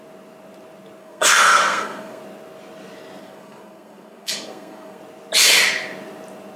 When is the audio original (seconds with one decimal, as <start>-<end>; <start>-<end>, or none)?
0.0-1.0; 2.2-3.2; 5.0-6.6